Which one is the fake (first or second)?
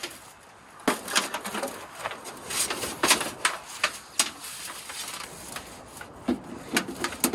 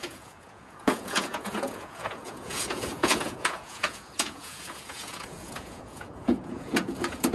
second